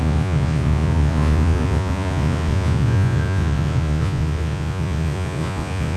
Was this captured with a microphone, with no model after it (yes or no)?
no